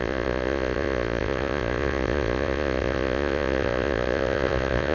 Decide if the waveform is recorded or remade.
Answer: remade